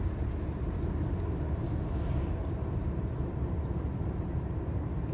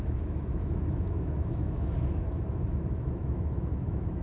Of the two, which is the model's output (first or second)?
second